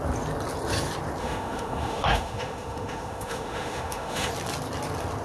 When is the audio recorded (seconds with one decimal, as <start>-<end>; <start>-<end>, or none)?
0.0-1.2; 4.3-5.2